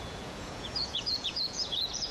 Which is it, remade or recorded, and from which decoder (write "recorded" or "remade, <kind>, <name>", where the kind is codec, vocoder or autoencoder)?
remade, vocoder, Vocos